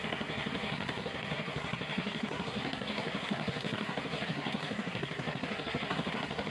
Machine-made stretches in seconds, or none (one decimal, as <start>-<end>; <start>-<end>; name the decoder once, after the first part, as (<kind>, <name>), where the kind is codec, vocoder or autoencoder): 0.0-6.5 (codec, SNAC)